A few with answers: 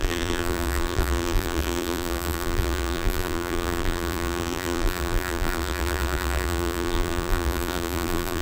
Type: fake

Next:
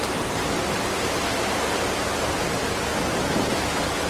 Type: real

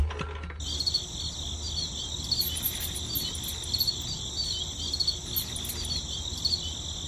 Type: real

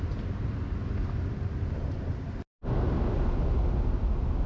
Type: real